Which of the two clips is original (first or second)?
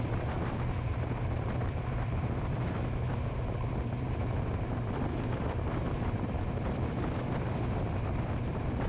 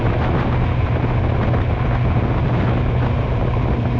second